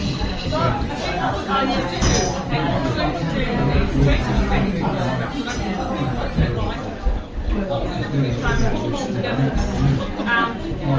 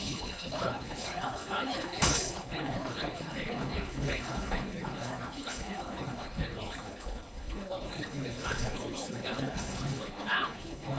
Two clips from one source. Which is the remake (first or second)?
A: second